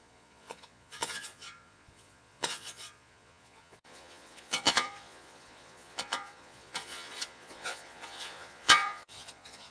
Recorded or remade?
remade